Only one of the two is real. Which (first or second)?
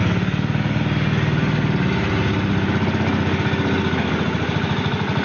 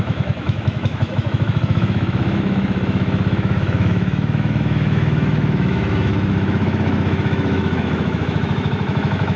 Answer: first